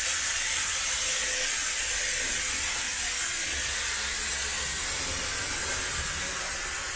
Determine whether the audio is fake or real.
real